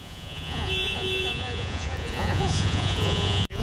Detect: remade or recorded remade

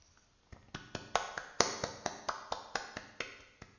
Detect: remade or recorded recorded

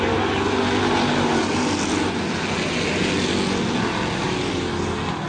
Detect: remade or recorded recorded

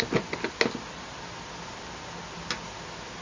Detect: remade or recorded recorded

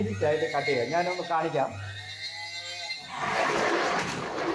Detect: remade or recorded recorded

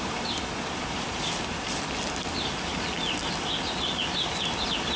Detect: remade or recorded recorded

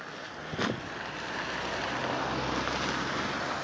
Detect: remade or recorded recorded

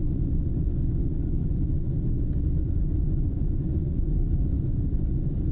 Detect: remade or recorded remade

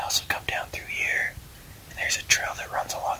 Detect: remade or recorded recorded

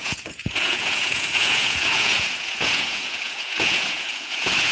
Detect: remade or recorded remade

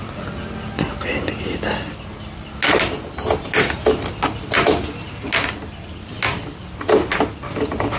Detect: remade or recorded recorded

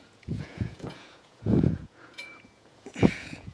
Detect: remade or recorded remade